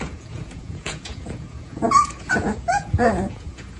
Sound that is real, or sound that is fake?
fake